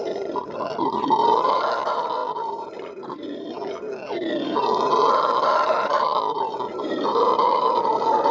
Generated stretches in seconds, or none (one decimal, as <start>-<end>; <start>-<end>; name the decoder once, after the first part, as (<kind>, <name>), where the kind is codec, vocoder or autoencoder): 0.0-8.3 (vocoder, BigVGAN v2)